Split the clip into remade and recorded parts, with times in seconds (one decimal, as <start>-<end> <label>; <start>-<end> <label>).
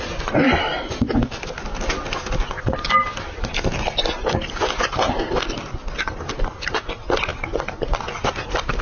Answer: 0.0-8.8 recorded